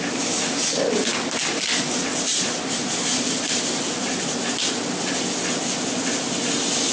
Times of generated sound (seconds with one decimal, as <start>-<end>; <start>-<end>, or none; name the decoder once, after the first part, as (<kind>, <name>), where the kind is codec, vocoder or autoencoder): none